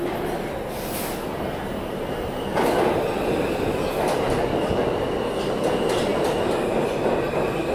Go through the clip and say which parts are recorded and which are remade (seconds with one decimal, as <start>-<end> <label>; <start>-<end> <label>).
0.0-7.7 recorded